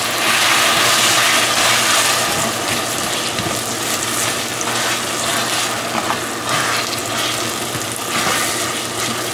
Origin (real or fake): real